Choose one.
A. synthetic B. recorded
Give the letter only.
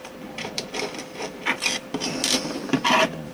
A